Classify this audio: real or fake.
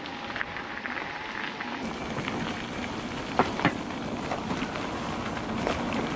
real